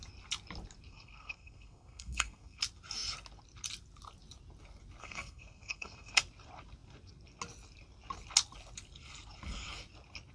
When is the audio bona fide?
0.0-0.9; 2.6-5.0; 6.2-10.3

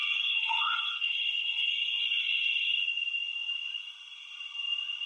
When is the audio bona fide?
1.7-5.1

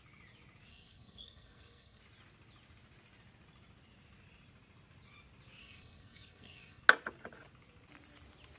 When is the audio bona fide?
0.0-0.7; 2.0-5.6; 6.8-8.6

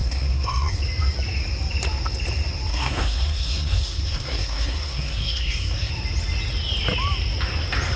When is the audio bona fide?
0.8-2.7; 5.9-8.0

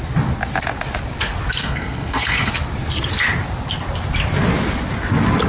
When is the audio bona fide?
0.0-1.6; 2.5-5.5

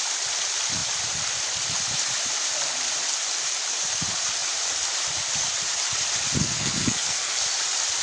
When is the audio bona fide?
0.0-6.4; 7.4-8.0

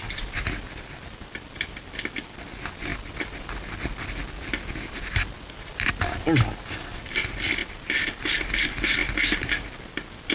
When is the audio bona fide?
0.0-10.3

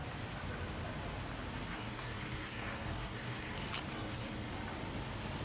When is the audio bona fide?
0.0-1.7; 3.5-3.9; 4.5-5.4